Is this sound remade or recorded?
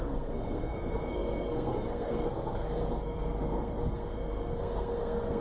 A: remade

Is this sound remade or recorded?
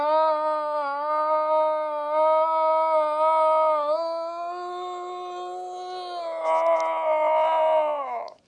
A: recorded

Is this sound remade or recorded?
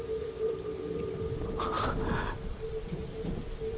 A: remade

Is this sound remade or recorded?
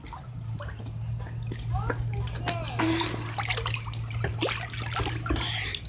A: recorded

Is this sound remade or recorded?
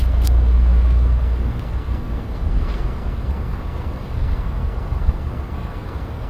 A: remade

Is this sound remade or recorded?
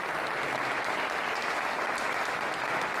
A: recorded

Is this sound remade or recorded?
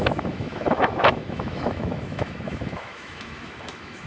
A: remade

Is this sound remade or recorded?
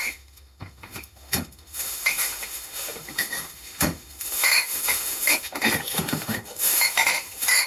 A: remade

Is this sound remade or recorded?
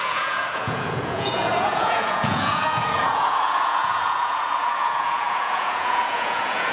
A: remade